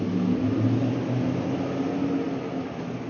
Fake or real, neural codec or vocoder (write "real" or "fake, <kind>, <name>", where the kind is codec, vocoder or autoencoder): real